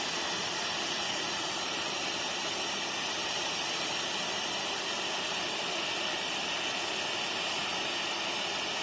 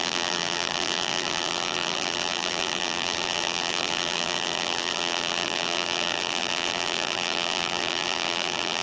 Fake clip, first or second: second